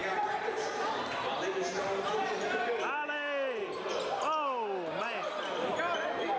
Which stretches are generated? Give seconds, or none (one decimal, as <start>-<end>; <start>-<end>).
0.0-2.3